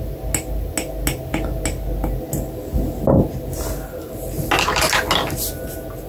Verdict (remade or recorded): recorded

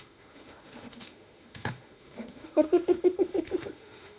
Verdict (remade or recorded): remade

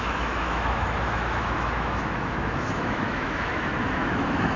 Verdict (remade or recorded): remade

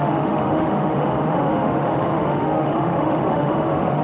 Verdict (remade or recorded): remade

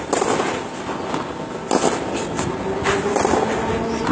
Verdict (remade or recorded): recorded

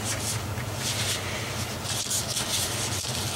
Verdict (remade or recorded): recorded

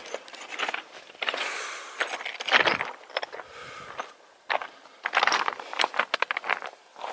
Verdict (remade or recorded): recorded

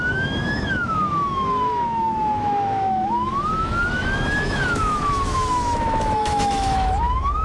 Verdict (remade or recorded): remade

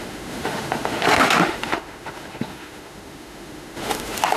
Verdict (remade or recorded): remade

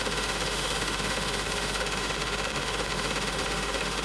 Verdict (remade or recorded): remade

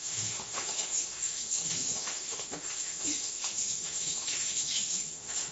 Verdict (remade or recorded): remade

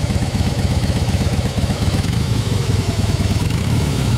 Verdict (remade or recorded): remade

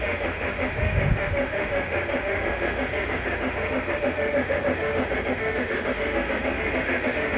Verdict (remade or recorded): remade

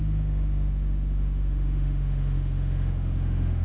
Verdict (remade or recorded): remade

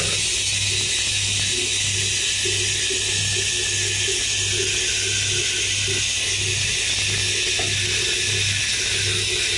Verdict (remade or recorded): recorded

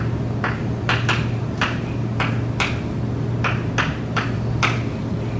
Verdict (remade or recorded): recorded